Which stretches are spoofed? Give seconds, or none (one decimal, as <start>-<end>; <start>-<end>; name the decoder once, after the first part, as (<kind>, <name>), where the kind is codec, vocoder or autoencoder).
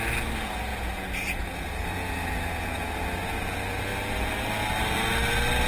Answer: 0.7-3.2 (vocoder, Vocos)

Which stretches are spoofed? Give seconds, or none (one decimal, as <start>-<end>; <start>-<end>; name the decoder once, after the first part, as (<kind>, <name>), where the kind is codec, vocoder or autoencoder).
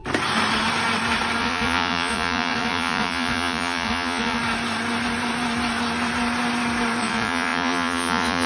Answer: 1.4-4.4 (vocoder, Vocos); 7.0-8.5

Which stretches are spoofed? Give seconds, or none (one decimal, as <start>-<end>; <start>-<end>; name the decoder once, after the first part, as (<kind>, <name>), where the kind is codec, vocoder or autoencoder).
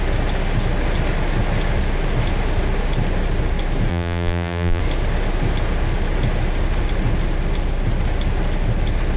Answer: 3.9-4.8 (vocoder, BigVGAN v2)